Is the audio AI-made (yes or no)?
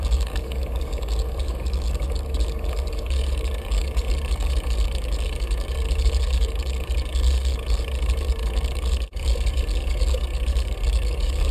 yes